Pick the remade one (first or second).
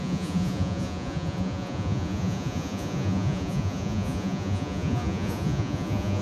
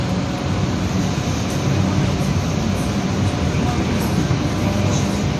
first